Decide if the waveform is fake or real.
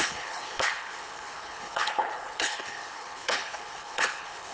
fake